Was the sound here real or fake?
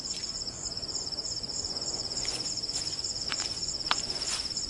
fake